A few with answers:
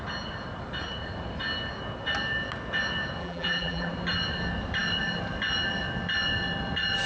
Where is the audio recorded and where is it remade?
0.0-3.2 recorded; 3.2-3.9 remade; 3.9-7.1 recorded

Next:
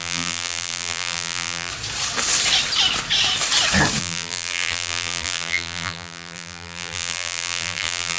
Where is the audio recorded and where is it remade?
0.0-1.7 remade; 1.7-4.0 recorded; 4.0-8.2 remade

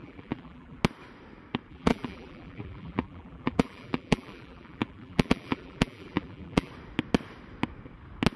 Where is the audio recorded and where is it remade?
0.0-0.8 remade; 0.8-1.7 recorded; 1.7-6.7 remade; 6.7-8.4 recorded

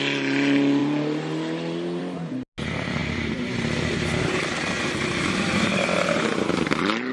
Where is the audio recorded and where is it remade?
0.0-3.0 recorded; 3.0-7.1 remade

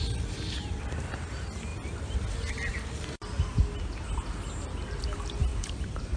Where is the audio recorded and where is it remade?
0.0-5.5 recorded; 5.5-6.2 remade